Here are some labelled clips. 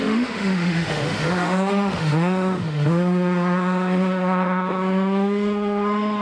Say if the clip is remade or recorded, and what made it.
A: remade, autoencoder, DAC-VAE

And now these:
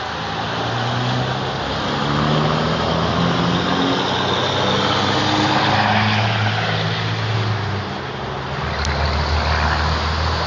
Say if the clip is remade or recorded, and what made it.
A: recorded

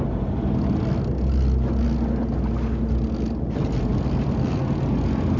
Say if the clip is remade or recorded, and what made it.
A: recorded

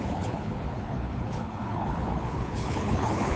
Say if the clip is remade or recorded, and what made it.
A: remade, codec, HILCodec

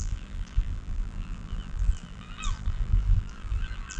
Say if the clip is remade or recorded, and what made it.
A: remade, vocoder, BigVGAN v2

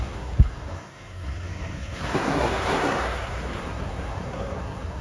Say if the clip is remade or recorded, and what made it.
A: remade, codec, SNAC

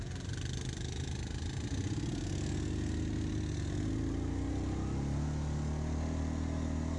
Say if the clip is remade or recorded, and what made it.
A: recorded